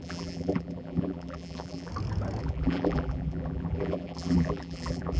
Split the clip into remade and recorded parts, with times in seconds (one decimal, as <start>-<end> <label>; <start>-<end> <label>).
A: 0.0-1.9 remade; 1.9-2.4 recorded; 2.4-5.2 remade